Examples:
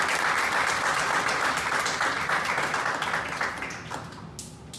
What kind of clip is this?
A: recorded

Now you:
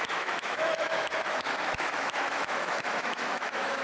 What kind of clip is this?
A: remade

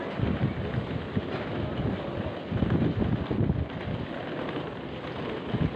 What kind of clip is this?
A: recorded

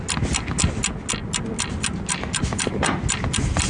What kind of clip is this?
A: recorded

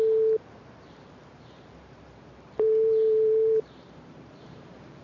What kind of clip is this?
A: remade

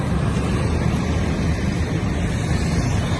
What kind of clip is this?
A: recorded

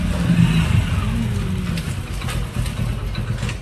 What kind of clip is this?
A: recorded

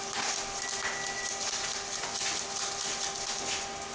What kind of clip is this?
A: recorded